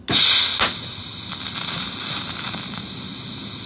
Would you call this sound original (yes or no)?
yes